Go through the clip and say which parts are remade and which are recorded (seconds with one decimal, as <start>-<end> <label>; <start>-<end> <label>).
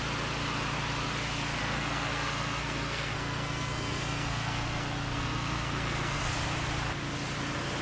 0.0-1.6 recorded; 1.6-6.2 remade; 6.2-7.8 recorded